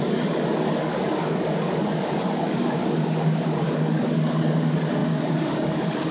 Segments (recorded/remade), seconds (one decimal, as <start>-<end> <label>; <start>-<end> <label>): 0.0-6.1 remade